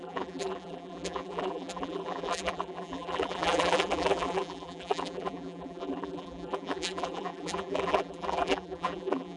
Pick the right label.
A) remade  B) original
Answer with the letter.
A